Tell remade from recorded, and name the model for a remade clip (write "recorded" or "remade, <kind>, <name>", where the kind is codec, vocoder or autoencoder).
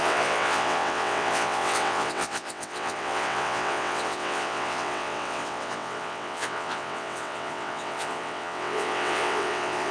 remade, vocoder, WaveNeXt